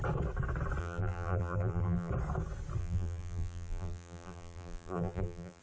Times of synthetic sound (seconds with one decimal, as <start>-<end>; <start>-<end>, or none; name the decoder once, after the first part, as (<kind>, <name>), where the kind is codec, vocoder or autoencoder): 0.8-2.1 (vocoder, BigVGAN v2); 2.8-5.6